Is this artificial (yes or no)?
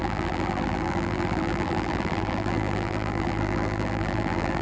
yes